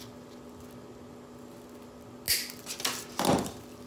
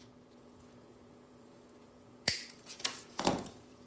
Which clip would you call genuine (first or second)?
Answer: first